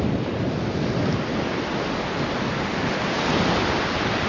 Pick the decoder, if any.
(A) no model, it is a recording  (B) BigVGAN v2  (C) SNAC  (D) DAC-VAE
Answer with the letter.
A